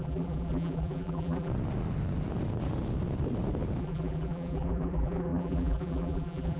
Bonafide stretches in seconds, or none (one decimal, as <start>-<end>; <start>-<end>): 1.5-3.8